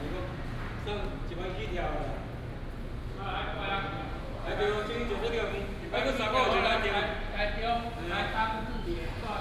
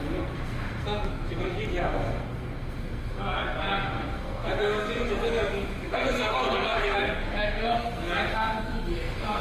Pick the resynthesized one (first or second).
second